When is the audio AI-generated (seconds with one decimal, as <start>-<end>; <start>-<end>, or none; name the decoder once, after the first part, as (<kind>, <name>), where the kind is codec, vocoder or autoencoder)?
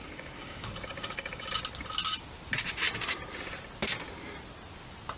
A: 0.0-1.5 (codec, DAC)